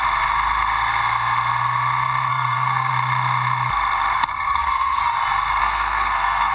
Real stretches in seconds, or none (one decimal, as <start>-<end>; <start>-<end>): 0.0-2.3; 2.9-4.3; 5.0-5.6